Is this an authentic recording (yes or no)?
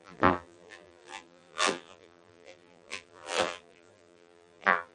no